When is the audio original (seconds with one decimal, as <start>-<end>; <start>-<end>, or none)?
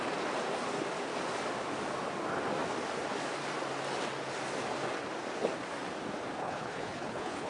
0.0-6.4